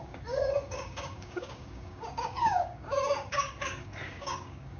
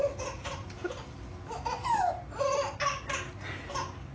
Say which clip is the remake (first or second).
first